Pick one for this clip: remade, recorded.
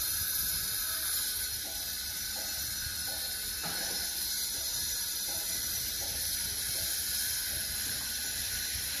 recorded